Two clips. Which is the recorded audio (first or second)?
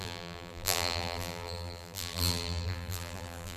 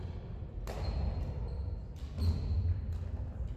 second